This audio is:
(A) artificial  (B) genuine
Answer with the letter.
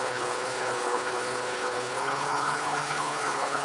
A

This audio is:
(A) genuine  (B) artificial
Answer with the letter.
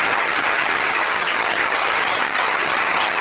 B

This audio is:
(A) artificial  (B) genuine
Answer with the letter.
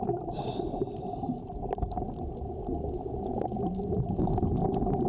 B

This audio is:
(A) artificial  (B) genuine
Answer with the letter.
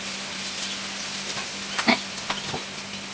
B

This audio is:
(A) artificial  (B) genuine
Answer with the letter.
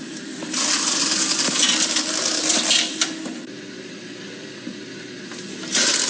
B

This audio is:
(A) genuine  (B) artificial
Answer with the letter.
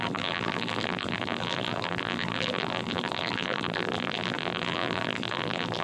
B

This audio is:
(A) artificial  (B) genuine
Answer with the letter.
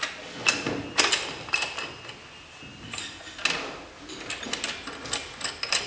B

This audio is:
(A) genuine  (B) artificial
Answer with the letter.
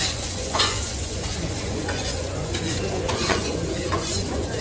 B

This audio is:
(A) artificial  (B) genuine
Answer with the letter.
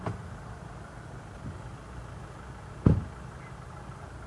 B